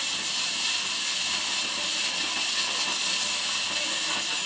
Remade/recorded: recorded